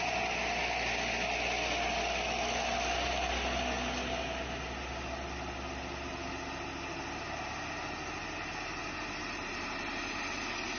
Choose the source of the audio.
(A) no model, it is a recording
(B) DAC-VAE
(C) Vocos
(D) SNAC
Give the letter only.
A